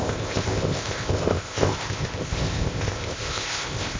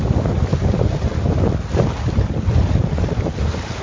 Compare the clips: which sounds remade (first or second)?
first